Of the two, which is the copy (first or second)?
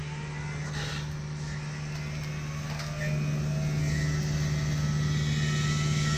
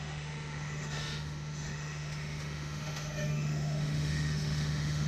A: second